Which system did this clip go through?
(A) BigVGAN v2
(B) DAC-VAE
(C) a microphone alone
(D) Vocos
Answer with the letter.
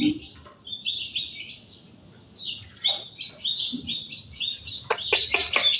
C